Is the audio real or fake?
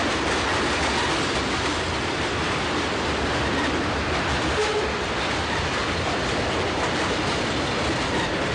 real